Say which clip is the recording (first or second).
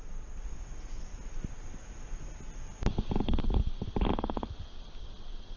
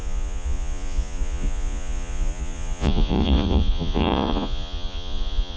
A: first